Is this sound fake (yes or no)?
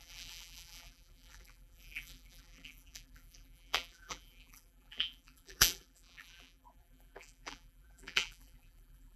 yes